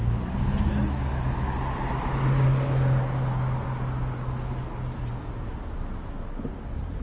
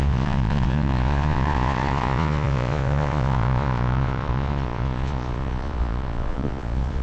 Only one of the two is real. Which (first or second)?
first